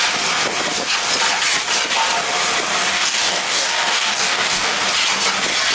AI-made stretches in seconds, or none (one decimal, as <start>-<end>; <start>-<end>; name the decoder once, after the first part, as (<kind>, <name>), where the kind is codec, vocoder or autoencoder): 2.9-4.8 (codec, DAC)